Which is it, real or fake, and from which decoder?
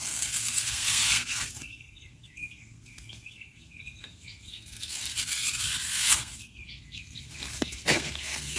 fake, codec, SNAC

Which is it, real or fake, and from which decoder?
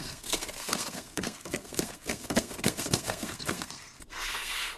fake, codec, SNAC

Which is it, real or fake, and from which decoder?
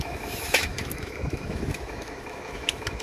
fake, autoencoder, DAC-VAE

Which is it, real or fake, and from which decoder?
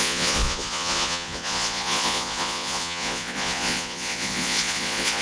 fake, vocoder, Vocos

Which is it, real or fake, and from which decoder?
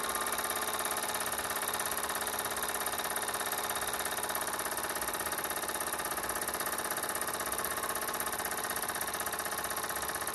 real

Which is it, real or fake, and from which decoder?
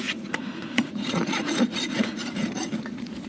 fake, vocoder, Vocos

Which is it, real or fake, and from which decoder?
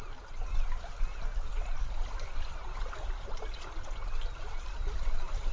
real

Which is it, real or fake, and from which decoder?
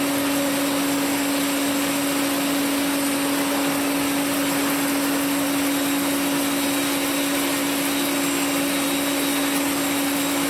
real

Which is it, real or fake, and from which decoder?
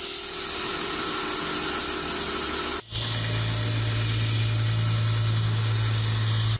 real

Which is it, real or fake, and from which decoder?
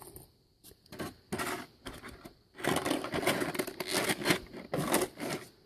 real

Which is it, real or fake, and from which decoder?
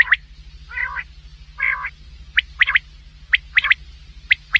real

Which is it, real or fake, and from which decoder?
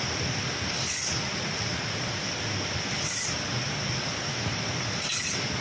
real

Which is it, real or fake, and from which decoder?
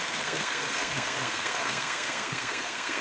fake, codec, SNAC